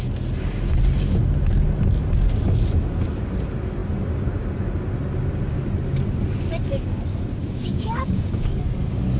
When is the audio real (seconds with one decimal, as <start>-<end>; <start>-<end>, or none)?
0.0-7.4; 8.6-9.2